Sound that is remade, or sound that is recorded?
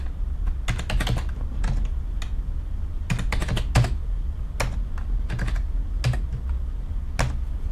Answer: recorded